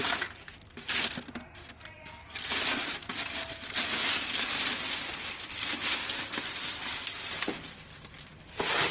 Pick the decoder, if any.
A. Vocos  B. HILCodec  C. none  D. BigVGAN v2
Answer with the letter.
C